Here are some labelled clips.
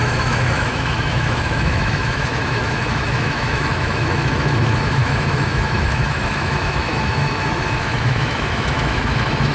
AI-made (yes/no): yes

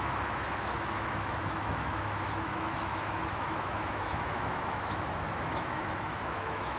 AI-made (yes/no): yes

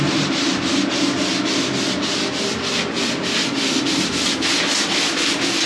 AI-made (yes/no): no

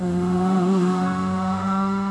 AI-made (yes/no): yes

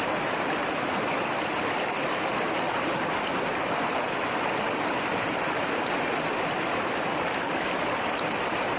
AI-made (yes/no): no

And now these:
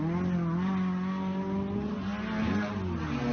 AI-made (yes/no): no